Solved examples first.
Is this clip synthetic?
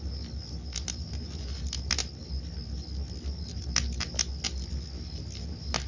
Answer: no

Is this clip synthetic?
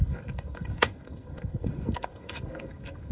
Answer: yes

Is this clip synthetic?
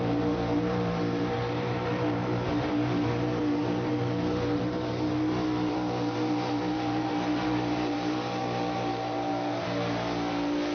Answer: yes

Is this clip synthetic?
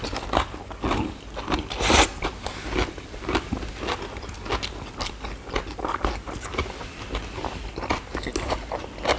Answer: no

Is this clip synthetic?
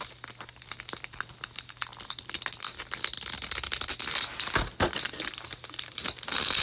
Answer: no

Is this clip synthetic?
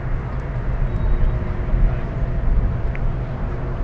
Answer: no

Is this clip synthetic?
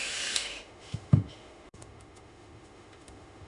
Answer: yes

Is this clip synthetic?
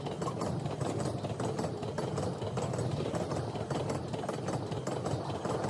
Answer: no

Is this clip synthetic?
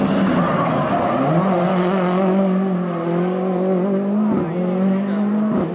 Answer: no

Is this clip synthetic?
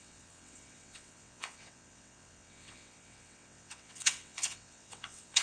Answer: yes